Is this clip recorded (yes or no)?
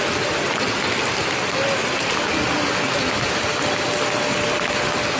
yes